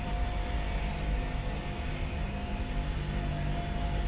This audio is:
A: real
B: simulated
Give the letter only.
A